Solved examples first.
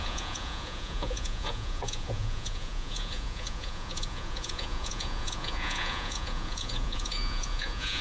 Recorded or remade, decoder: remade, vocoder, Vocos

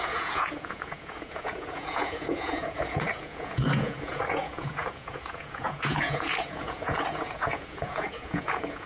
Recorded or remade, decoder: remade, vocoder, Vocos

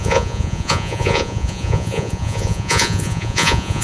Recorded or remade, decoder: remade, vocoder, Vocos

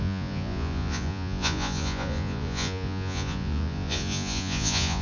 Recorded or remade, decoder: remade, vocoder, Vocos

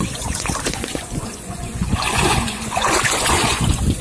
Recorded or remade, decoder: remade, vocoder, Vocos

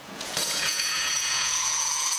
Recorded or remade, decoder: remade, vocoder, Vocos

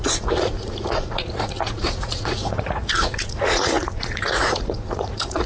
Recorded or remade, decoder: remade, vocoder, Vocos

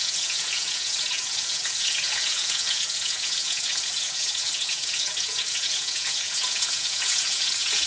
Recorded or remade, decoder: remade, vocoder, Vocos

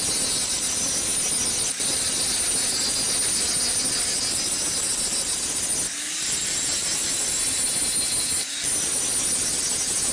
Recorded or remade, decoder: recorded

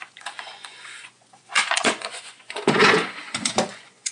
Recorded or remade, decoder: remade, vocoder, Vocos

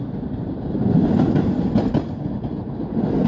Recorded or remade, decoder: recorded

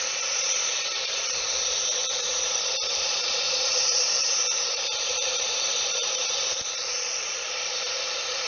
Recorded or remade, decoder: remade, vocoder, Vocos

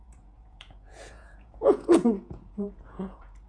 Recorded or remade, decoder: remade, vocoder, Vocos